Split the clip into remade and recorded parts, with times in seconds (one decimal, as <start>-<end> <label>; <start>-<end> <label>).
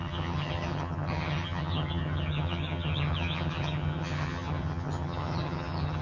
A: 0.0-6.0 remade